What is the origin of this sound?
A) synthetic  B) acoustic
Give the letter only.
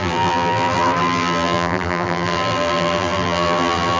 A